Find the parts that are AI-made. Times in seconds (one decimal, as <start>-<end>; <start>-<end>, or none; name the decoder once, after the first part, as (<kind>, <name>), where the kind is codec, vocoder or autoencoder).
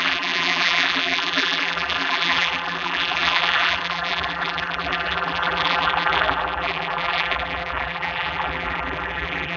0.0-9.6 (vocoder, BigVGAN v2)